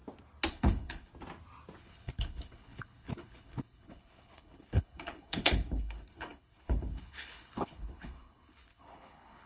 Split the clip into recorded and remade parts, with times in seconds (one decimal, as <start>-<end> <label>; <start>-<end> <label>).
0.0-0.5 recorded; 0.5-1.1 remade; 1.1-1.8 recorded; 1.8-9.5 remade